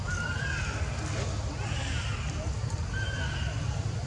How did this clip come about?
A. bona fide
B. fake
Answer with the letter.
A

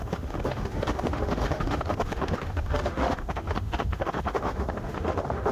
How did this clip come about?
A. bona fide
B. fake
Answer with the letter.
B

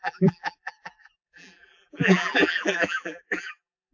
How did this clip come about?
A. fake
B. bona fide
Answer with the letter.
A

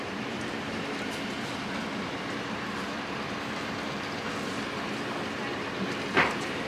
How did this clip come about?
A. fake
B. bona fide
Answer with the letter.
A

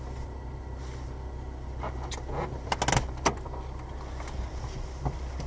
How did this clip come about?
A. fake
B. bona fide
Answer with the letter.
B